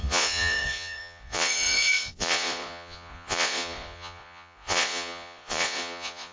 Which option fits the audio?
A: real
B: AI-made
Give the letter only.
B